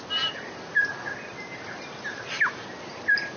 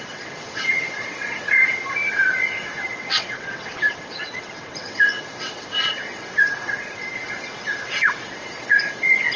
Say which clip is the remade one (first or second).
second